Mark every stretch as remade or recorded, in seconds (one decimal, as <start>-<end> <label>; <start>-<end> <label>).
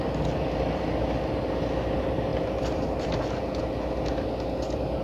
0.0-2.3 recorded; 2.3-3.4 remade; 3.4-5.0 recorded